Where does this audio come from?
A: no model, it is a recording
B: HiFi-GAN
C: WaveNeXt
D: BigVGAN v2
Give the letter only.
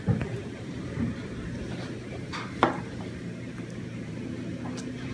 D